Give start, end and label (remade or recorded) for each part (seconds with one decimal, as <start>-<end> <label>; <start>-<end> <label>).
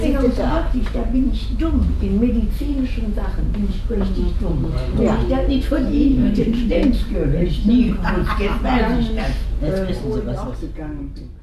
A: 0.0-6.1 recorded; 6.1-6.7 remade; 6.7-11.4 recorded